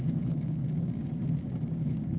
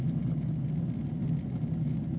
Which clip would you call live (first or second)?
second